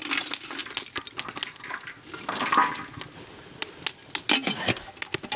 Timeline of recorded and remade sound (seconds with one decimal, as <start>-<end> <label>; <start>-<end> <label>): 0.0-5.4 recorded